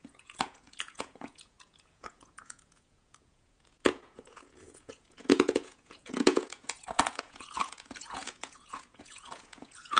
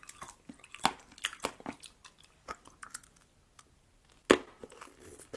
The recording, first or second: second